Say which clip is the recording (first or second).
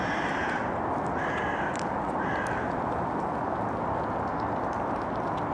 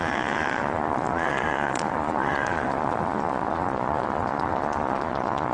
first